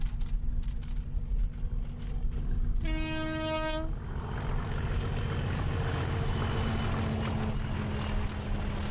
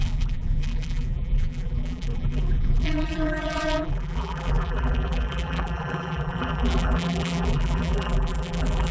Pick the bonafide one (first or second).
first